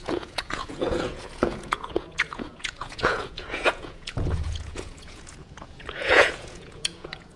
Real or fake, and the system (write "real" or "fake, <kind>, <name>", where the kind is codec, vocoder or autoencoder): fake, vocoder, Vocos